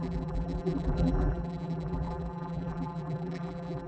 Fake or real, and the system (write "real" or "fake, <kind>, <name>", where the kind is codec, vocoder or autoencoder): fake, vocoder, BigVGAN v2